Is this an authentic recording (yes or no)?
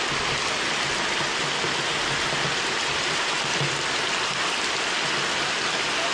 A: yes